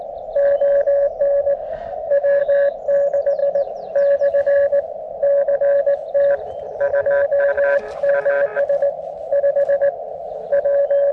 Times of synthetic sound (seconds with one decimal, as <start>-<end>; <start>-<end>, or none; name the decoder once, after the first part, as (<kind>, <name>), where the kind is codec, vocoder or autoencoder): 1.7-2.4 (autoencoder, DAC-VAE)